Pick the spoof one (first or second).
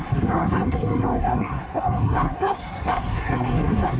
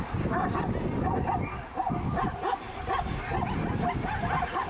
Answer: first